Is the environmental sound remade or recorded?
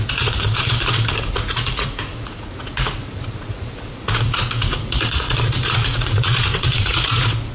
remade